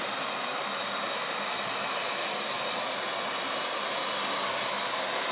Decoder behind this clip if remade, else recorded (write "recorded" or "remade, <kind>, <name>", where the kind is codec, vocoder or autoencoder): recorded